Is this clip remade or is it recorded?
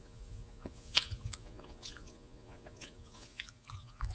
remade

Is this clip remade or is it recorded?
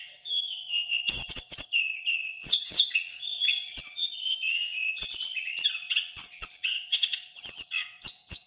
remade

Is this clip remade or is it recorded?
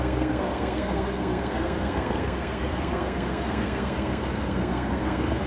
remade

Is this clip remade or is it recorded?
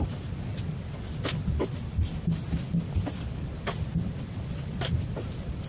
recorded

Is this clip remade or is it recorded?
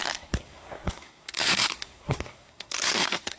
remade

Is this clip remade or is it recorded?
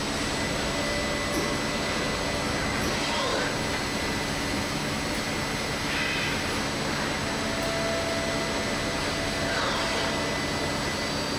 recorded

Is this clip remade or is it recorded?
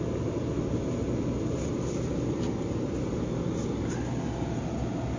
recorded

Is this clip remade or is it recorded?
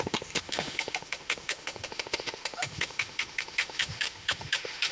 remade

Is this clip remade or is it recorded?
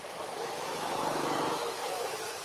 remade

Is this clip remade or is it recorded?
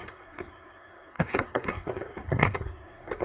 remade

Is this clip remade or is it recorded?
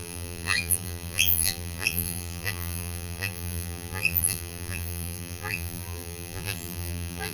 remade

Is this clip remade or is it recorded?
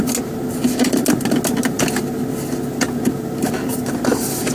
recorded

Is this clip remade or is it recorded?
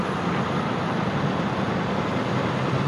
remade